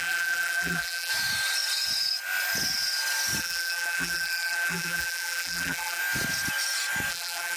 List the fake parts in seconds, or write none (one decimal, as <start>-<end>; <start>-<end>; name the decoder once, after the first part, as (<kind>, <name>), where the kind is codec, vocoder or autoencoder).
0.0-1.1 (vocoder, BigVGAN v2); 3.4-6.0; 7.1-7.6